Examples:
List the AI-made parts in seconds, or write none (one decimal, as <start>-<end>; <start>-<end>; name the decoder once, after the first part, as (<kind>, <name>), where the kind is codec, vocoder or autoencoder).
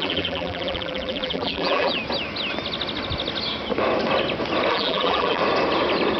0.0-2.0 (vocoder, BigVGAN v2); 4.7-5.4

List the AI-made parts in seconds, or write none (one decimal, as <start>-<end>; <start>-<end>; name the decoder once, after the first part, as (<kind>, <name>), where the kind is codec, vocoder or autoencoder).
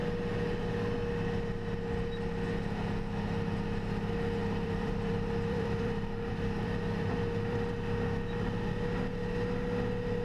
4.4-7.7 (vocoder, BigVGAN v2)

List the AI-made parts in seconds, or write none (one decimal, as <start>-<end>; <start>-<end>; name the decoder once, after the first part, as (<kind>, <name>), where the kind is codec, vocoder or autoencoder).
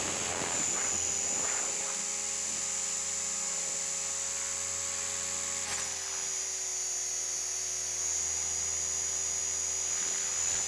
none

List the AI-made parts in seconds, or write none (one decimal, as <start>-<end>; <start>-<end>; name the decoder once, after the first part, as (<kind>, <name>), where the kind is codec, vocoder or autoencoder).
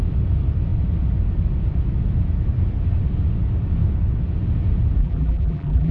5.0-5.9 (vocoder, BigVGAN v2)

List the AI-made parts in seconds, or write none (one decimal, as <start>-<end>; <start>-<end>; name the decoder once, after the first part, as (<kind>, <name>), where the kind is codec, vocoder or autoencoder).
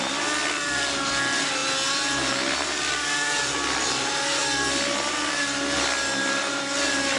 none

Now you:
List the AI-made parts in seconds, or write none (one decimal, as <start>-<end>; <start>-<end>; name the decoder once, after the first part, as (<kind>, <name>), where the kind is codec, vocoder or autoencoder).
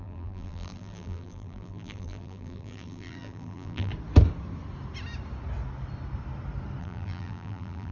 0.0-3.9 (vocoder, BigVGAN v2); 6.8-7.9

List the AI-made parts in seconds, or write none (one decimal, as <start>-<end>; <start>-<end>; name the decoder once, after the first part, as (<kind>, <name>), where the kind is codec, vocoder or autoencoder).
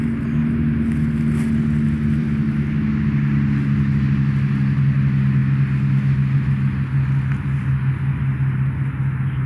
none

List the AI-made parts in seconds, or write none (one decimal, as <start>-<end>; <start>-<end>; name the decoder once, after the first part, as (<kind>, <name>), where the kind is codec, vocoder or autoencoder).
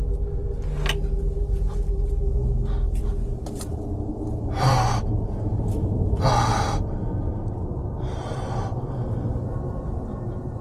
3.0-5.6 (vocoder, BigVGAN v2); 7.3-8.1